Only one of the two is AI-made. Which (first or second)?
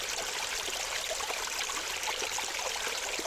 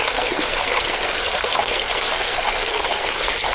second